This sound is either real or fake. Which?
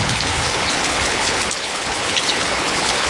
fake